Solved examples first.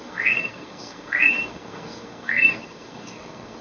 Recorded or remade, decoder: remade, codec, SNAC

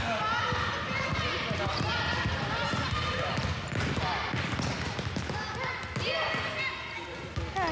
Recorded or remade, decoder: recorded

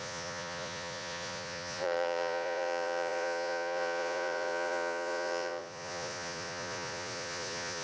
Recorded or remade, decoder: remade, vocoder, Vocos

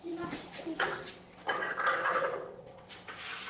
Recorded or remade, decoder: remade, vocoder, WaveNeXt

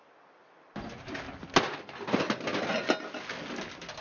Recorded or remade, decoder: recorded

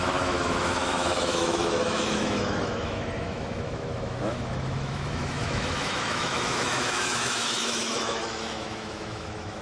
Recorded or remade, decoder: remade, autoencoder, DAC-VAE